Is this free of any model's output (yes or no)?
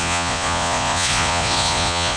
no